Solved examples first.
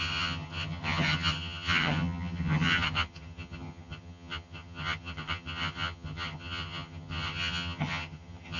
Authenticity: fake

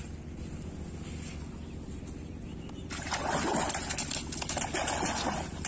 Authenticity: real